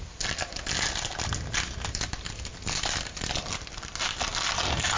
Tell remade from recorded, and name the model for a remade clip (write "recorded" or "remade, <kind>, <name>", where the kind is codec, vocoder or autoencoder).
recorded